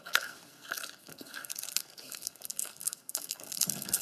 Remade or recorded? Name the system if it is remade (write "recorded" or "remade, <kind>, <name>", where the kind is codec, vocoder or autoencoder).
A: remade, codec, SNAC